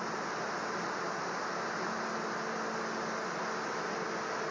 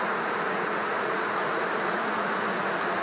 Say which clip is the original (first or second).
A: first